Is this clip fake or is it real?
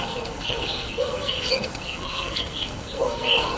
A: fake